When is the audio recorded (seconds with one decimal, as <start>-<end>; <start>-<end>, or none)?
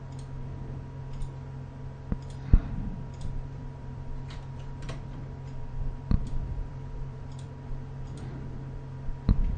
0.0-2.6; 7.7-9.6